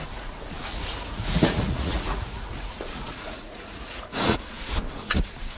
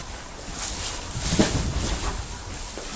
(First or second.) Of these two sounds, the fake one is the first